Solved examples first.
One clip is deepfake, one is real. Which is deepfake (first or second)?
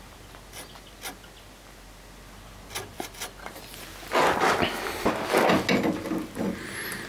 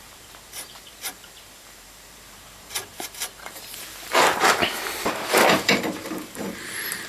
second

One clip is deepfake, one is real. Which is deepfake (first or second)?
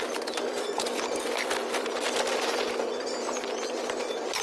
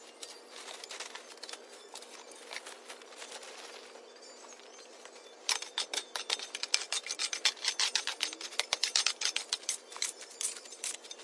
first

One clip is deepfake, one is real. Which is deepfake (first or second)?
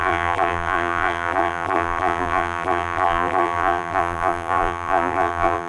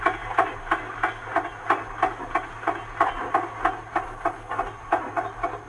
first